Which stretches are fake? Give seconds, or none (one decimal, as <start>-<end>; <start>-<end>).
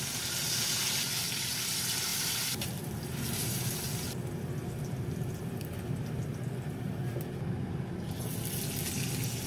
2.1-5.4